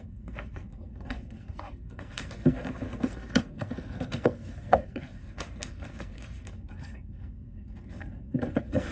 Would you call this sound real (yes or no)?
no